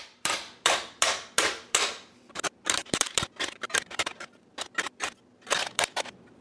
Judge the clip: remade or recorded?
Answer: remade